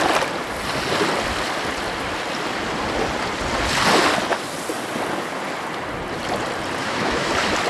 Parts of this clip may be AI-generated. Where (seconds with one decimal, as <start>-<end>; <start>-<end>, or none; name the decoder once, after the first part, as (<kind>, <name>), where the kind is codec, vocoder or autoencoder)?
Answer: 6.8-7.3 (autoencoder, DAC-VAE)